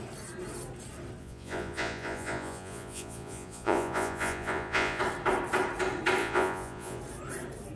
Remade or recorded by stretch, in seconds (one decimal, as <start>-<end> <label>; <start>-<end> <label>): 0.0-1.2 recorded; 1.2-5.0 remade; 5.0-6.2 recorded; 6.2-7.0 remade; 7.0-7.8 recorded